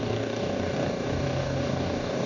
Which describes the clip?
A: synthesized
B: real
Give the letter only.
A